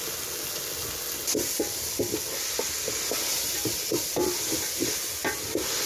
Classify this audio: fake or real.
real